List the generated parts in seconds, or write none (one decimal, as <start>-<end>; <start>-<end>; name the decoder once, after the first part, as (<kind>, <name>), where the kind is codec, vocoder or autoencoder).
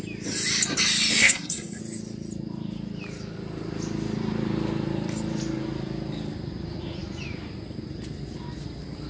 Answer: 1.2-1.8 (codec, SNAC)